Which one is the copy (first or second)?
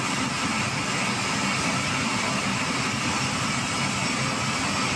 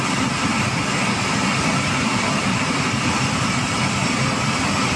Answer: second